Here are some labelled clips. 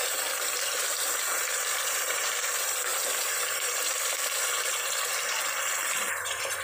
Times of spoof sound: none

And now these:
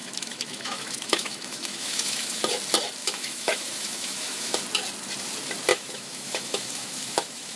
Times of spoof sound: 0.0-2.4; 3.0-4.6; 5.7-7.6

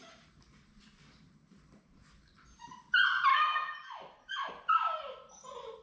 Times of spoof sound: 3.3-4.5

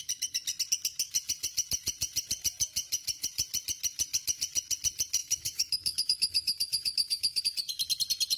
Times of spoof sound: 5.2-7.4

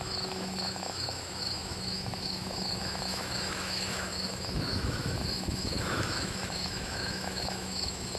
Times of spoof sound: 0.0-8.2

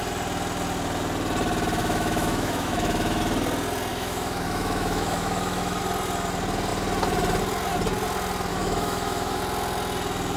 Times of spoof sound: 1.8-3.2; 3.9-5.8; 8.5-9.4